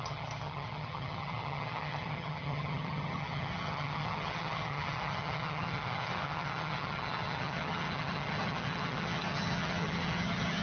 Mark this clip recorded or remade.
remade